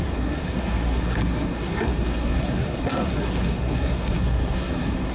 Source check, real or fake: fake